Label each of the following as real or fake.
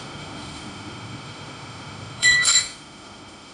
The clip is fake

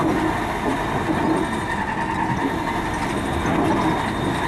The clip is real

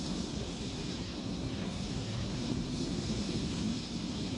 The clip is fake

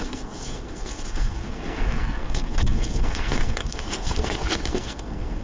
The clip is fake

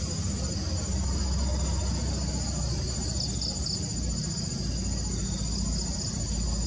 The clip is real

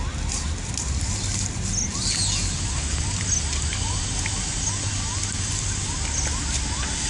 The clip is real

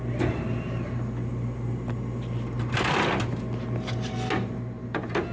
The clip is real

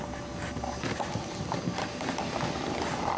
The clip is real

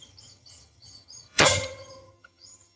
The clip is fake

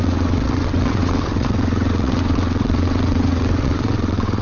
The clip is fake